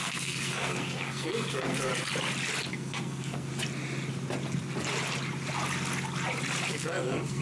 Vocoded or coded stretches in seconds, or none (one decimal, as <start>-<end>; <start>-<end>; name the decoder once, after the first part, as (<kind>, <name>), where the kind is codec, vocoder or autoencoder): 0.0-1.9 (codec, SNAC); 2.7-3.5; 6.7-7.4